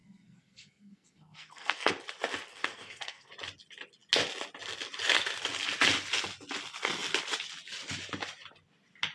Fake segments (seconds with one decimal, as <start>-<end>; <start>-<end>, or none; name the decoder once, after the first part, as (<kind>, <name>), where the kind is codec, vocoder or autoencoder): 0.0-1.9 (codec, SNAC); 2.5-3.3